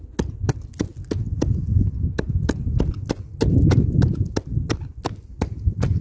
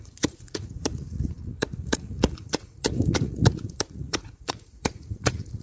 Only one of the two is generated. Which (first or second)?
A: second